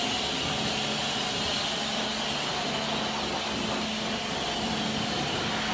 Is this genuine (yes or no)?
yes